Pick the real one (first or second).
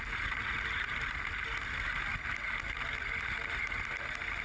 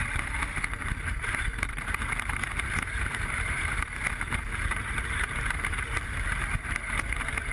first